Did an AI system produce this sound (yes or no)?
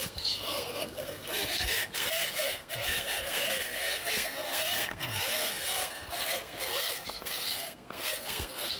yes